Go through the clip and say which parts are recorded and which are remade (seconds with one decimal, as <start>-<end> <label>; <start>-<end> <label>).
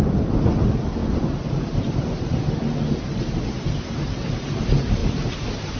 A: 0.0-5.8 recorded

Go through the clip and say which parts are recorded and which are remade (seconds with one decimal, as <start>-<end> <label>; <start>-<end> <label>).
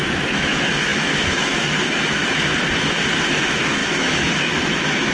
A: 0.0-2.2 remade; 2.2-3.4 recorded; 3.4-5.1 remade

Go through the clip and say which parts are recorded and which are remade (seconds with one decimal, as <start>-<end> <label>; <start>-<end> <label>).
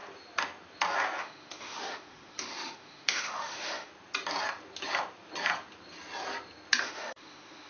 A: 0.0-1.2 recorded; 1.2-3.9 remade; 3.9-6.8 recorded; 6.8-7.7 remade